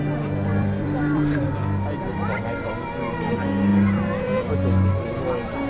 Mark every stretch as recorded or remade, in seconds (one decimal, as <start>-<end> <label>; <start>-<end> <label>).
0.0-0.5 recorded; 0.5-1.5 remade; 1.5-2.1 recorded; 2.1-2.7 remade; 2.7-3.7 recorded; 3.7-4.5 remade; 4.5-5.7 recorded